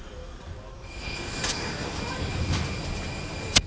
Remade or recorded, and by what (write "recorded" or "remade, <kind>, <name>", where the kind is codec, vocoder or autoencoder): recorded